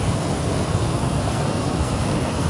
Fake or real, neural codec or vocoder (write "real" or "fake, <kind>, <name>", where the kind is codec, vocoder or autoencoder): fake, codec, SNAC